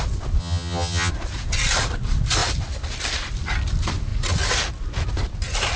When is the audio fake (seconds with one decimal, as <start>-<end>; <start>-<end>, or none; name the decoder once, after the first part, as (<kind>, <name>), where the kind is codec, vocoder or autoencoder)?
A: 0.4-1.1 (vocoder, HiFi-GAN)